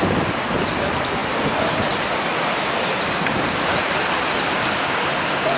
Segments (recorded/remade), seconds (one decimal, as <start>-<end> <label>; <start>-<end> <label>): 0.0-5.6 recorded